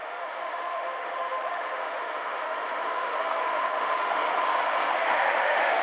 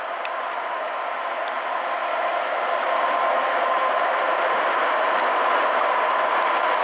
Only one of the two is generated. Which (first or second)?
first